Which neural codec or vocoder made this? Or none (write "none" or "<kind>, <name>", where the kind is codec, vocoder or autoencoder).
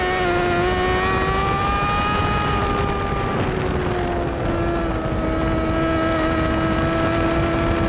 none